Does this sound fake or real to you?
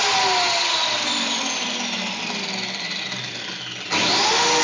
real